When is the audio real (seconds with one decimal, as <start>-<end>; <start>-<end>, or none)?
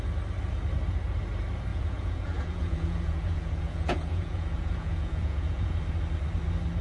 0.0-1.7; 5.8-6.8